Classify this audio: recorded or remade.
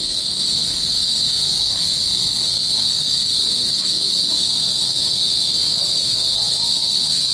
remade